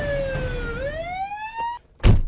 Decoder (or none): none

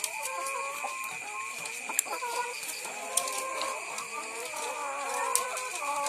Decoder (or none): none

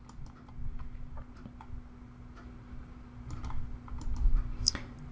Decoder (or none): none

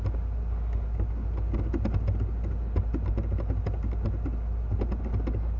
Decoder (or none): none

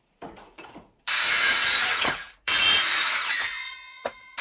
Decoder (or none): vocoder, Vocos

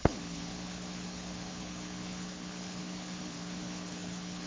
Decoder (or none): codec, HILCodec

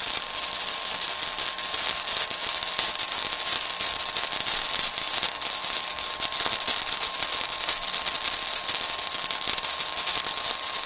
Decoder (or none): none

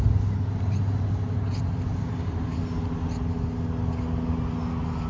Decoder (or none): none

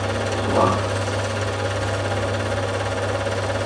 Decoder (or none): none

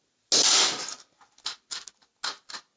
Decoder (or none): none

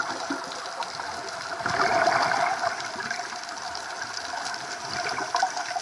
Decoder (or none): none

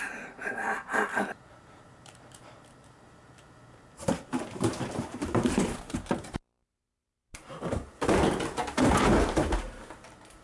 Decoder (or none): vocoder, BigVGAN v2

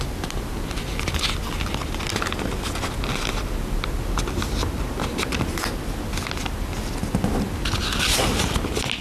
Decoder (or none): none